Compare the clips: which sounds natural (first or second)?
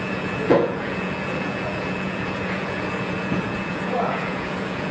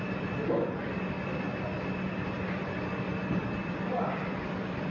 second